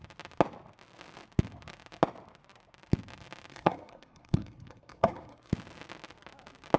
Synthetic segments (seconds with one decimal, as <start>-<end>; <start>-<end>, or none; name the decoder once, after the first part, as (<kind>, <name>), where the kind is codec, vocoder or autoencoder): 3.5-5.5 (codec, SNAC)